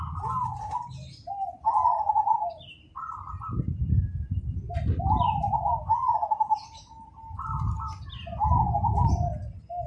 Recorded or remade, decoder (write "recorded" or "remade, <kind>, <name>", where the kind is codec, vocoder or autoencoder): recorded